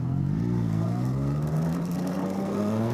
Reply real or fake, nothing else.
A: fake